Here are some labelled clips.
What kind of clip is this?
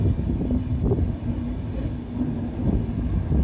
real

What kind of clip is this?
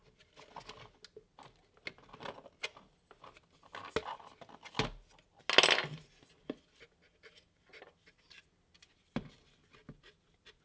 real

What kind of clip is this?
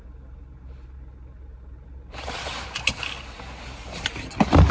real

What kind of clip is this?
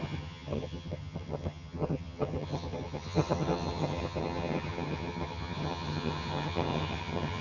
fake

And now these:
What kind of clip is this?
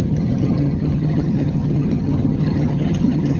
fake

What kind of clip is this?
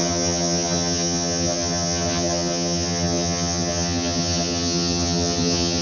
fake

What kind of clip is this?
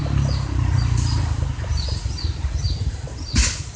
real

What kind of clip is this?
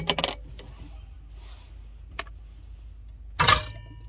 real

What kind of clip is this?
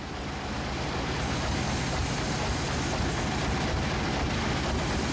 real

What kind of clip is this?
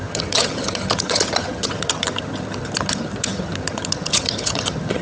fake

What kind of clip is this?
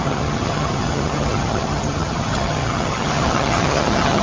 fake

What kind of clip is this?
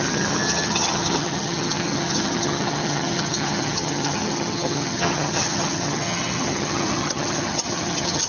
fake